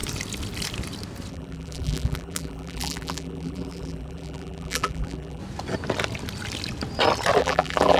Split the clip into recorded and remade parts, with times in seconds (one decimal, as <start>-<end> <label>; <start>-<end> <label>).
0.0-1.3 recorded; 1.3-5.4 remade; 5.4-7.4 recorded; 7.4-8.0 remade